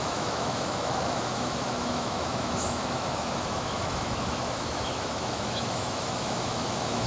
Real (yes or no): no